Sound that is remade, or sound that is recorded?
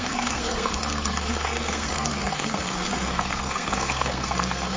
remade